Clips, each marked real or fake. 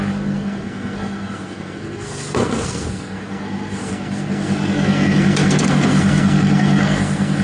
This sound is fake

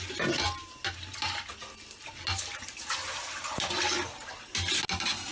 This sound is real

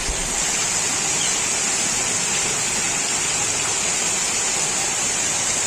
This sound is real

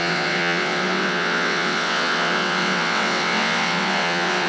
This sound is fake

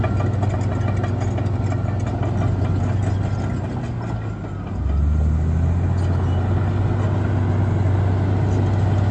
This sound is real